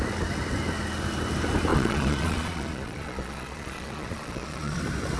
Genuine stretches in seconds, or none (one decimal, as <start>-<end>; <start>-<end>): 0.0-1.7; 4.8-5.2

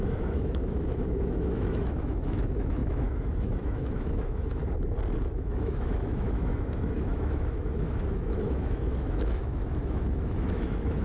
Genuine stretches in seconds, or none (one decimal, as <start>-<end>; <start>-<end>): 4.6-5.2

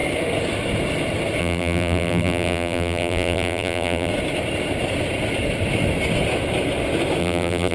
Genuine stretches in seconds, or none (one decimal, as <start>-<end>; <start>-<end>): 0.0-1.4; 4.1-7.2

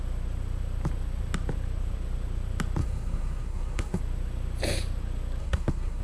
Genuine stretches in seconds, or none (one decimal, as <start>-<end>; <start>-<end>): 0.0-2.8; 4.0-5.4

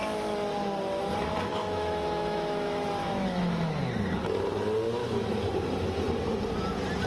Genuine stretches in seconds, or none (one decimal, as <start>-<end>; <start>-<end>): 0.0-1.5; 3.8-5.0; 5.5-7.1

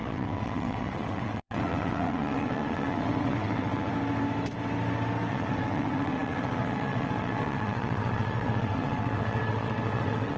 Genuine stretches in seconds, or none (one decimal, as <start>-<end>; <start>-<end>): 3.9-5.3